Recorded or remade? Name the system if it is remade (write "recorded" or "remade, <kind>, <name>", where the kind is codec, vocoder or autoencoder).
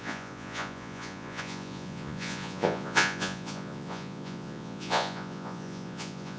remade, vocoder, Vocos